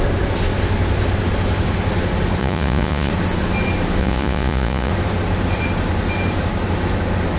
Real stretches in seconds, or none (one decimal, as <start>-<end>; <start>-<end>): 0.0-2.4; 3.1-4.0; 4.9-7.4